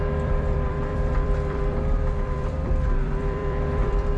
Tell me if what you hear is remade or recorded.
remade